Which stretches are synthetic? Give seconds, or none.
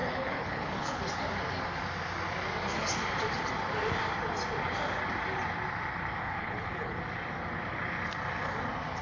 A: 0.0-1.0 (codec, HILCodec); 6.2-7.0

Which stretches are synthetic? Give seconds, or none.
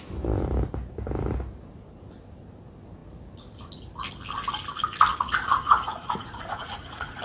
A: 5.1-7.2 (vocoder, Vocos)